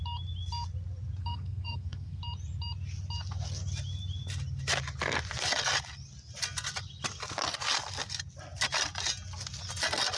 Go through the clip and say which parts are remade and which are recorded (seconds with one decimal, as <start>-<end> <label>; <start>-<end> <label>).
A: 0.0-1.2 recorded; 1.2-2.2 remade; 2.2-10.2 recorded

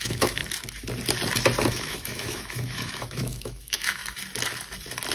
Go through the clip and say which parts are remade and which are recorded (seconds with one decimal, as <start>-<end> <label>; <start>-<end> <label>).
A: 0.0-0.4 remade; 0.4-1.7 recorded; 1.7-4.0 remade; 4.0-5.1 recorded

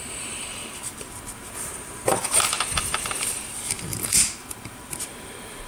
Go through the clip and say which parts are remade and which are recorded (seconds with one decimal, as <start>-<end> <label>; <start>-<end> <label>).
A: 0.0-5.7 remade

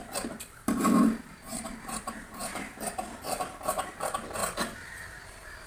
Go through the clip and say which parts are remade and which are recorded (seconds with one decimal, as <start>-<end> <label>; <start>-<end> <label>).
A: 0.0-5.7 remade

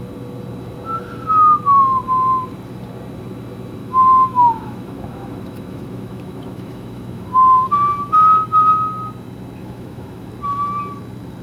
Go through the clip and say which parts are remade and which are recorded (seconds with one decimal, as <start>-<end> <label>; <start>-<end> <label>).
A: 0.0-3.8 recorded; 3.8-7.7 remade; 7.7-9.6 recorded; 9.6-10.3 remade; 10.3-11.4 recorded